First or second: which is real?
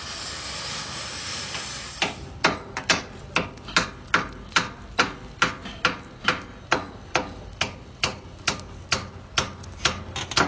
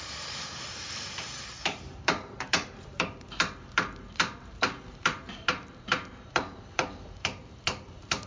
first